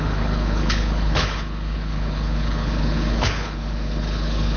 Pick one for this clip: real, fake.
fake